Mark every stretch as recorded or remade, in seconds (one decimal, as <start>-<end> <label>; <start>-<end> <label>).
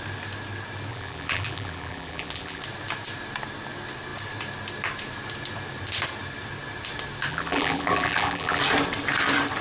0.0-0.9 recorded; 0.9-2.6 remade; 2.6-7.3 recorded; 7.3-8.6 remade; 8.6-9.6 recorded